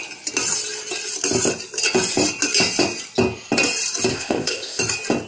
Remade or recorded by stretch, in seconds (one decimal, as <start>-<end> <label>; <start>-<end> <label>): 0.0-4.1 recorded; 4.1-4.8 remade; 4.8-5.3 recorded